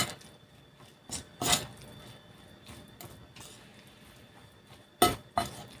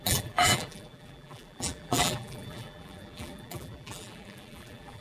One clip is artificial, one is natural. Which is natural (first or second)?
first